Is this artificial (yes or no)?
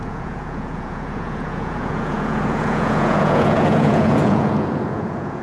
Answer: yes